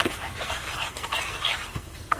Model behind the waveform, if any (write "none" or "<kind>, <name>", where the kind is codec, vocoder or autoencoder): codec, SNAC